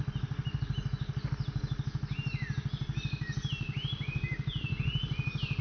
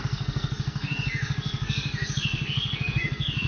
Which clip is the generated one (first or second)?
second